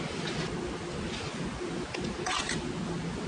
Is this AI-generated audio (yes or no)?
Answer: no